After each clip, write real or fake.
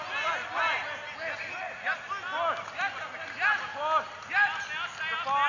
real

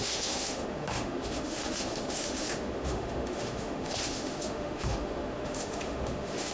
fake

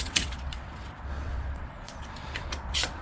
fake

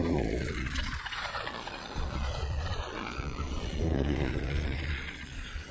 fake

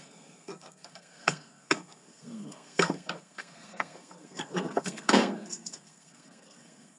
fake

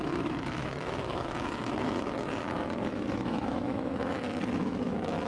fake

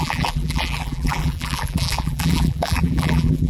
fake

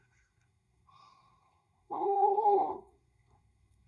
fake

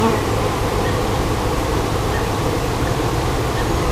fake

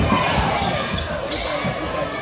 real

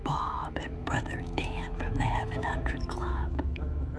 fake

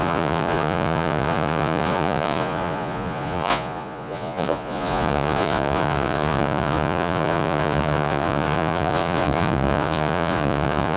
fake